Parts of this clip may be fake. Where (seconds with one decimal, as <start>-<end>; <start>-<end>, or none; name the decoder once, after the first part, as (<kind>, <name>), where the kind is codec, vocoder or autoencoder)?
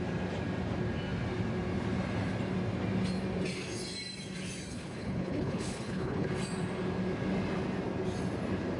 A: 4.7-6.3 (codec, HILCodec)